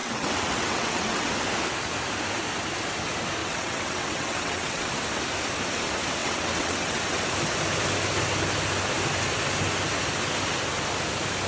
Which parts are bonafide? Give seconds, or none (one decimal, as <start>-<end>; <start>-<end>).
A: 1.3-3.4; 4.9-6.2; 7.2-11.5

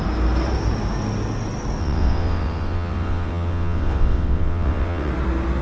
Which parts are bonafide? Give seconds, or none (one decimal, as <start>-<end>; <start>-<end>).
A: 0.0-1.8; 5.1-5.6

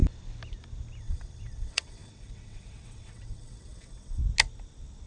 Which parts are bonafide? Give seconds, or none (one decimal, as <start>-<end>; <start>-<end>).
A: 0.0-1.0; 4.2-5.1

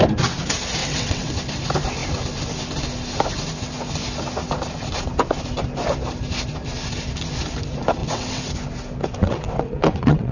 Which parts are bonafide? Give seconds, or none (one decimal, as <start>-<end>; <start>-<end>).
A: 0.0-0.8; 1.3-8.0; 8.5-9.2